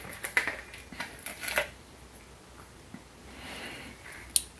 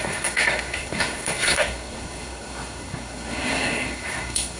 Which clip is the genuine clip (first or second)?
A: first